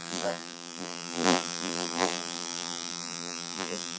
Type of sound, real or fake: fake